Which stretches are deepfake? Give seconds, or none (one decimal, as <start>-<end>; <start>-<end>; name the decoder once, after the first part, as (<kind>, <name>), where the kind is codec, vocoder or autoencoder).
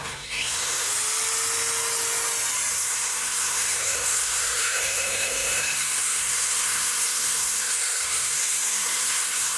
0.0-0.9 (codec, SNAC); 2.7-9.6